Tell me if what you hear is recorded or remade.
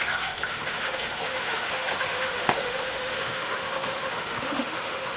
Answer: remade